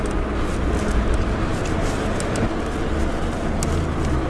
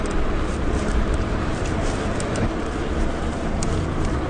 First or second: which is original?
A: first